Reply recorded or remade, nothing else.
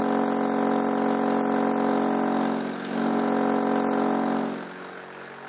recorded